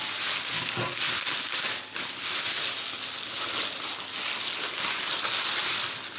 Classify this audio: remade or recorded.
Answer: recorded